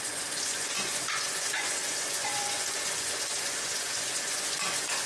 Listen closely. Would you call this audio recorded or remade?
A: remade